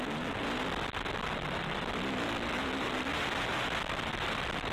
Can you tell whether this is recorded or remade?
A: recorded